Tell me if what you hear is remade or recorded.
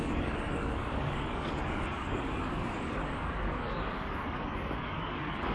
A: remade